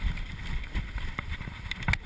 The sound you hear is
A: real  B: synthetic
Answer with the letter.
A